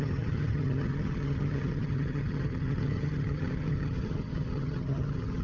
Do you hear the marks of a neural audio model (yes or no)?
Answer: yes